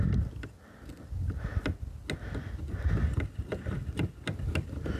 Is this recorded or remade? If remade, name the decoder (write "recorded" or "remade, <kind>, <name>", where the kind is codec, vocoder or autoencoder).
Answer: recorded